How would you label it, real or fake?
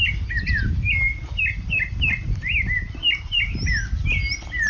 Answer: real